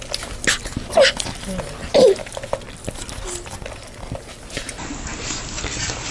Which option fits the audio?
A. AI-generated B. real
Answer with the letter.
B